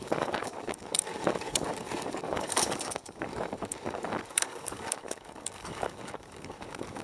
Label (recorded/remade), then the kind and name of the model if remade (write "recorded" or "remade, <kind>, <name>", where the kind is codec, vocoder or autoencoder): remade, codec, DAC